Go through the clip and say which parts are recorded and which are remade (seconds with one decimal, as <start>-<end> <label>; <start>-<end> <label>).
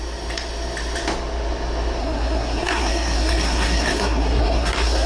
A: 0.0-2.0 recorded; 2.0-5.1 remade